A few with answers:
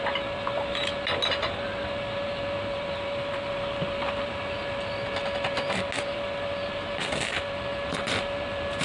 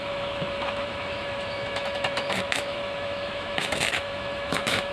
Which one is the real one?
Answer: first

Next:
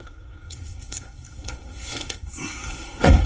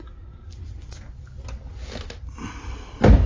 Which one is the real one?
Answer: second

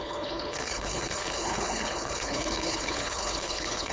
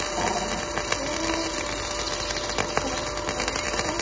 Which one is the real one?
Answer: second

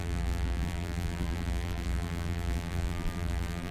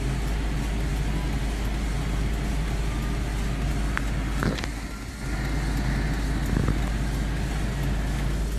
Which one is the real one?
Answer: second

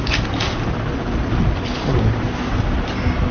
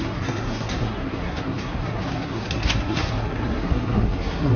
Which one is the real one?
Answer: first